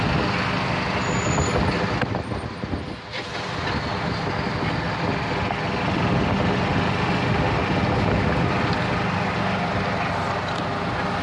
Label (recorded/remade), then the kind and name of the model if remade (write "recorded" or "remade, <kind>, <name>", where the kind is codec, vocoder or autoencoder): recorded